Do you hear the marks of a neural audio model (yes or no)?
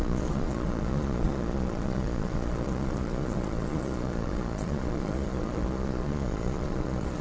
yes